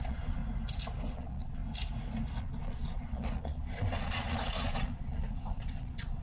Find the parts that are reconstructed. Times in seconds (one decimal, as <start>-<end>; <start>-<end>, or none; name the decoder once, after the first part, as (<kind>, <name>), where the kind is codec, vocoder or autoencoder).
0.0-0.4 (vocoder, Vocos); 1.1-1.6; 2.4-6.2